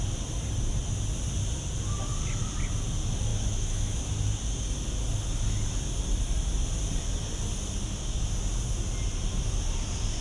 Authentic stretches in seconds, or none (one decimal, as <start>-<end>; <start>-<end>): 0.0-3.3; 4.0-10.2